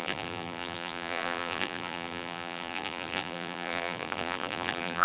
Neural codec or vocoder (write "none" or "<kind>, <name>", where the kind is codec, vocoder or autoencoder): vocoder, BigVGAN v2